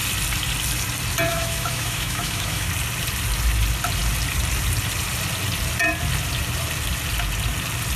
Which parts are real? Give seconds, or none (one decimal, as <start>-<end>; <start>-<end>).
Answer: 0.0-1.3; 2.7-8.0

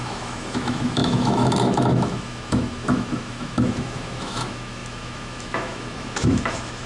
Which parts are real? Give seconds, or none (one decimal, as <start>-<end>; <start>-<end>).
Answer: none

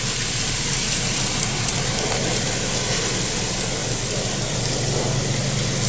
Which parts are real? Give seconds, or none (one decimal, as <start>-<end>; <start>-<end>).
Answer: 0.0-5.9

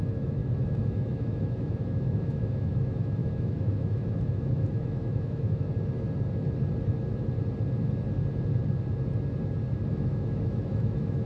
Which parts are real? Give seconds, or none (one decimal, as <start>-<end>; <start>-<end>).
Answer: 5.7-9.9

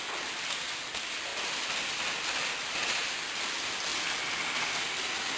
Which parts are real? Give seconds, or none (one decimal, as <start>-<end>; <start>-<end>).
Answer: 0.0-5.4

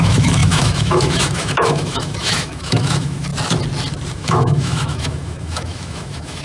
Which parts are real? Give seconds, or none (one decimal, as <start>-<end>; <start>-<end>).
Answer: 3.3-4.1

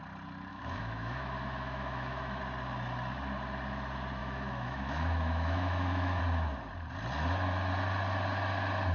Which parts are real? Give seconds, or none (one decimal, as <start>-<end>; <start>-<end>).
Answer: 0.0-0.5; 2.4-4.2; 6.2-8.9

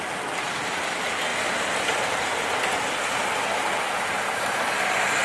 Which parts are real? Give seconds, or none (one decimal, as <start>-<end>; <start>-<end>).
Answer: 0.0-5.2